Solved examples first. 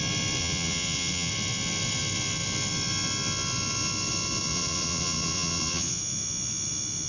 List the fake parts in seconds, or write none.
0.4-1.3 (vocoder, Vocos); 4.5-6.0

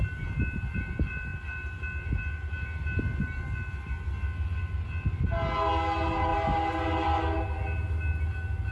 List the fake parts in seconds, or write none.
none

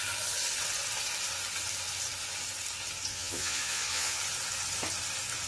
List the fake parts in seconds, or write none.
3.1-4.2 (vocoder, Vocos)

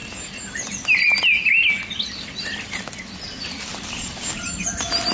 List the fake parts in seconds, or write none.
none

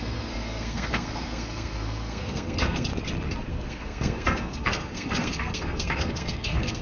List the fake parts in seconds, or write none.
0.0-2.9 (codec, SNAC); 3.5-6.8